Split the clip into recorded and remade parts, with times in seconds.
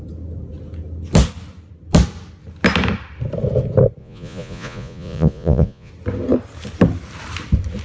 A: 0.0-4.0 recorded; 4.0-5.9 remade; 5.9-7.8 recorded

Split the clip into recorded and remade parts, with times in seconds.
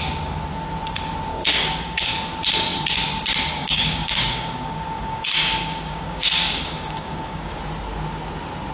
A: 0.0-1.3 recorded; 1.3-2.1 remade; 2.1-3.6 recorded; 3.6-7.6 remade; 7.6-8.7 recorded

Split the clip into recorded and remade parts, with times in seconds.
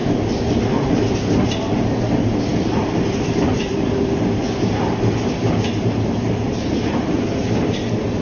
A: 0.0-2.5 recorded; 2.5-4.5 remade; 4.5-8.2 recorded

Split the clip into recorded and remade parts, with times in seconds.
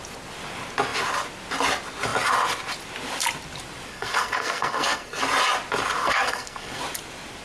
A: 0.0-3.9 recorded; 3.9-5.2 remade; 5.2-6.0 recorded; 6.0-6.8 remade; 6.8-7.4 recorded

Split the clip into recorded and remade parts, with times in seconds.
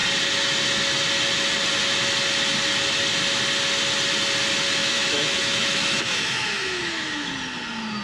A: 0.0-4.8 recorded; 4.8-7.3 remade; 7.3-8.0 recorded